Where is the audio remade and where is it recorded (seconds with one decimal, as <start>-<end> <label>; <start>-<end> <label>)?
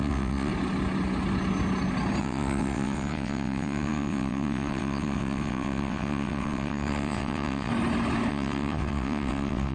0.0-0.5 remade; 0.5-2.2 recorded; 2.2-7.7 remade; 7.7-8.3 recorded; 8.3-9.7 remade